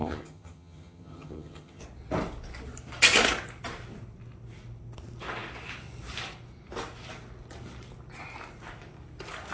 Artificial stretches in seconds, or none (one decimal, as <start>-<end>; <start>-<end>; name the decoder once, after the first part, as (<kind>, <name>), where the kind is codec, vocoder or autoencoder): 0.0-1.8 (vocoder, HiFi-GAN)